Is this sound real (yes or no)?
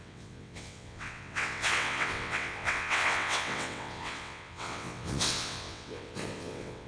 no